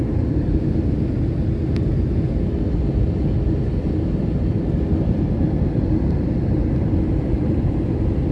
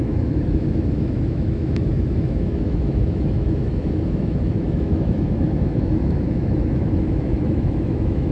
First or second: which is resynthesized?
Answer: second